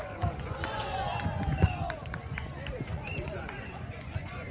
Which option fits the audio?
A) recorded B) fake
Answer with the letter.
B